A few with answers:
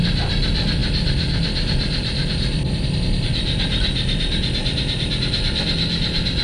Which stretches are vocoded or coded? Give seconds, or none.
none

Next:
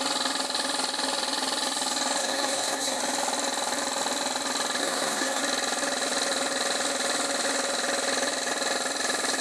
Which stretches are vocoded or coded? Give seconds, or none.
2.2-3.0 (codec, SNAC); 4.8-5.4

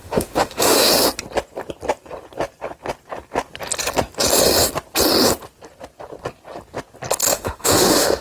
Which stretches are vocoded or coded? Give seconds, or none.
0.0-0.9 (autoencoder, DAC-VAE); 7.3-8.2